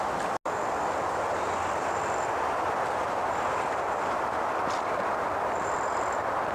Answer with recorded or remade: recorded